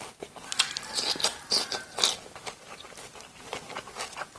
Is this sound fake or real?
real